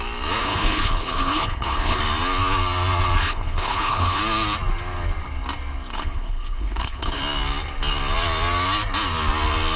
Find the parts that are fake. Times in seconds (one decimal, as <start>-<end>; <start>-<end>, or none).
0.4-2.0; 3.2-4.2; 5.9-7.2